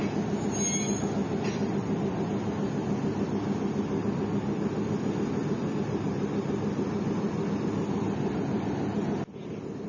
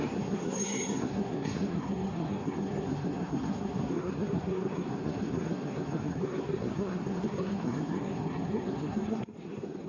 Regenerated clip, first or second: second